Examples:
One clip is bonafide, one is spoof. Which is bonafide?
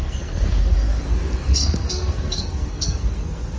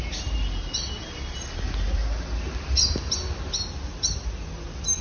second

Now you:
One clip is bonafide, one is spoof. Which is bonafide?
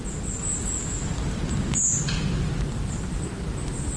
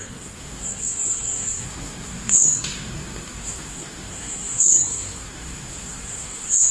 first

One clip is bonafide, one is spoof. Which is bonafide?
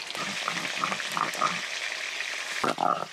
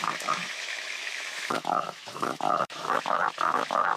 first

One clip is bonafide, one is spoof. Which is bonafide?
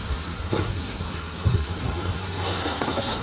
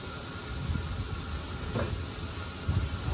second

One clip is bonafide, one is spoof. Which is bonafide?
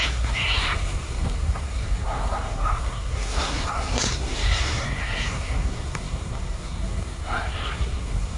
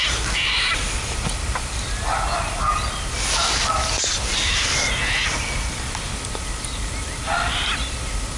second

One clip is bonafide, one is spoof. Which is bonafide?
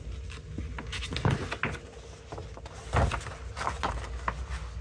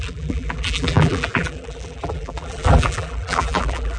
first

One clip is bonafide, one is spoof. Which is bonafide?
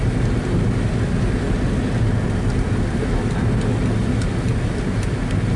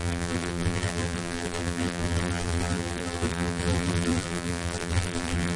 first